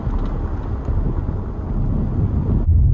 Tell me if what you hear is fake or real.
real